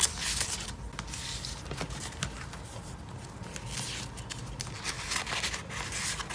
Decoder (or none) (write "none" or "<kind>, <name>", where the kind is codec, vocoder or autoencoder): none